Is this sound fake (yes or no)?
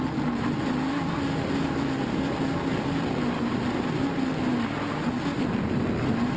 no